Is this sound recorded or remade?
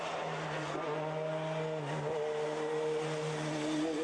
recorded